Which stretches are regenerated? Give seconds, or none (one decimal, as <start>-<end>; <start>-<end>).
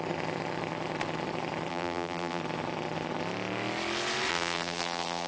1.7-2.4; 4.3-5.3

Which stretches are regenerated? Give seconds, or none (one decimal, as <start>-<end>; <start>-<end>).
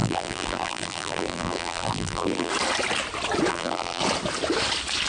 0.0-2.5; 3.5-4.0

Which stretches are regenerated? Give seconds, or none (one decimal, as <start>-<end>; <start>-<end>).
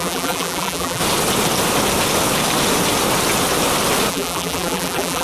0.0-1.0; 4.1-5.2